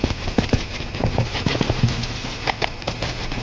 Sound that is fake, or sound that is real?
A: real